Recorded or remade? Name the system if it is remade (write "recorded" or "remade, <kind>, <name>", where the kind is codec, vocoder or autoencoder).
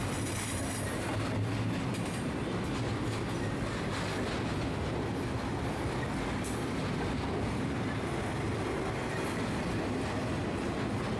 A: recorded